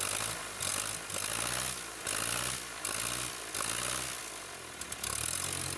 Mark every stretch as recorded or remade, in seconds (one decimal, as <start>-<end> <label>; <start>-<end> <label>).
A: 0.0-5.8 recorded